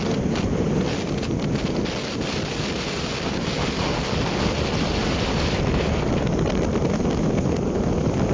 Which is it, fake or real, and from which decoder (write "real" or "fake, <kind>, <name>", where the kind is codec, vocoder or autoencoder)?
real